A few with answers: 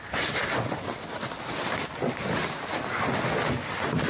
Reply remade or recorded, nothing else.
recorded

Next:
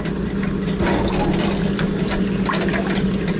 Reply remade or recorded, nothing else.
recorded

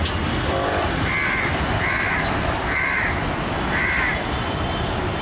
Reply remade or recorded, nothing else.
recorded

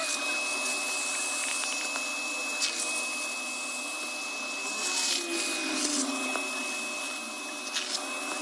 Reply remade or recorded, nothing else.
recorded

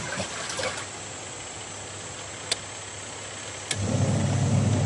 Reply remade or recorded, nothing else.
recorded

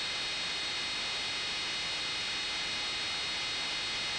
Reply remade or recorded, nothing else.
recorded